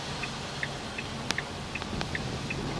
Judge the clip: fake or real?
real